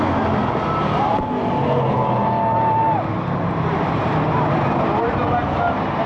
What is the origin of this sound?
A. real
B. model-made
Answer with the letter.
A